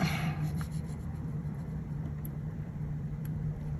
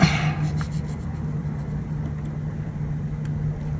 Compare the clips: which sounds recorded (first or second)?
second